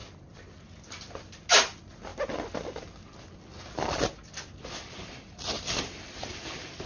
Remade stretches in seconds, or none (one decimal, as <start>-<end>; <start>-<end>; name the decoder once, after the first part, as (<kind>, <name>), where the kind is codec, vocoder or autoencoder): none